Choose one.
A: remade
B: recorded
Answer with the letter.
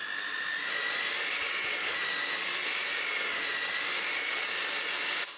B